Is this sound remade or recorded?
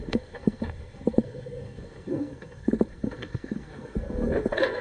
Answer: remade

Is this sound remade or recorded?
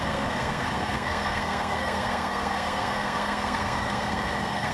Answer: remade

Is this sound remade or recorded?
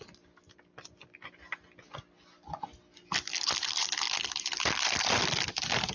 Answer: recorded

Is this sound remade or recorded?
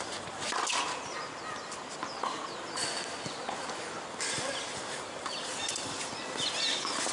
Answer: recorded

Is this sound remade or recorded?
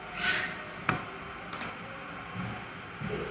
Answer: recorded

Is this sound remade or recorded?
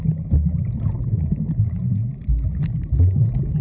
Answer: recorded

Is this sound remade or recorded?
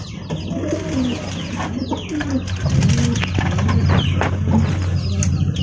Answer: recorded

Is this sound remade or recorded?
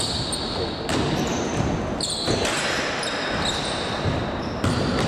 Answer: recorded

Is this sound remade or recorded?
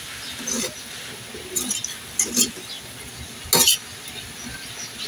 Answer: recorded